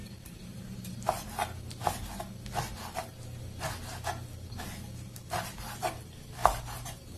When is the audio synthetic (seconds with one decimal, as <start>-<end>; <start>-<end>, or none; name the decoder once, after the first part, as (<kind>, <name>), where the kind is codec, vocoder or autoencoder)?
0.0-0.9 (vocoder, BigVGAN v2); 6.4-7.2